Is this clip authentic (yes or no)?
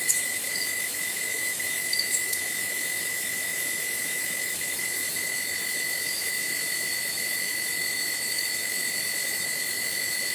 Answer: no